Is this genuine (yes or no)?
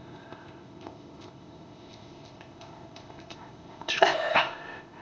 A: no